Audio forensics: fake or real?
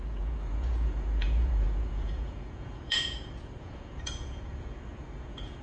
fake